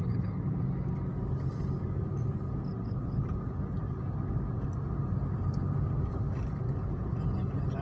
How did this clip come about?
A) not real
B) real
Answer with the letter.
B